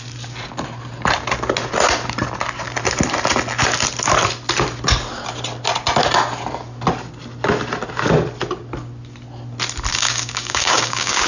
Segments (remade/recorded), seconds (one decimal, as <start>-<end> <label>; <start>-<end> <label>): 0.0-9.9 recorded; 9.9-11.3 remade